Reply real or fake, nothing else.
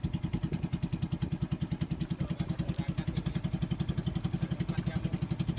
real